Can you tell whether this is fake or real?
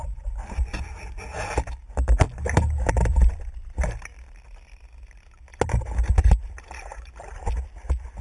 real